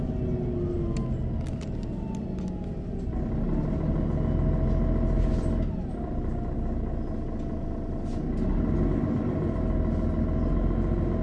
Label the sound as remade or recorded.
recorded